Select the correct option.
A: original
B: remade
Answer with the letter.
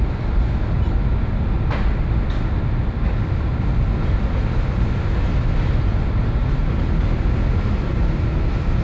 A